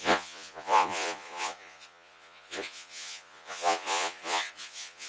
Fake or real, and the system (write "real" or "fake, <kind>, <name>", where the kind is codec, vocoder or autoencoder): fake, vocoder, Vocos